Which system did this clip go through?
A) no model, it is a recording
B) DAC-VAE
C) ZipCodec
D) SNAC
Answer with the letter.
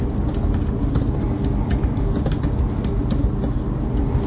A